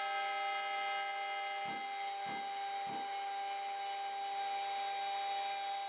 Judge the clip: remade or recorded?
recorded